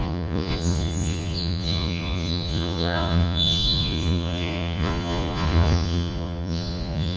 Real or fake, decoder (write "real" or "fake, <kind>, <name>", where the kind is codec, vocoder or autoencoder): fake, vocoder, Vocos